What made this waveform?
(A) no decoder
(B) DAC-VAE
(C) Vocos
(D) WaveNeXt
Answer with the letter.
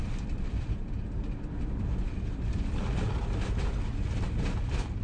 A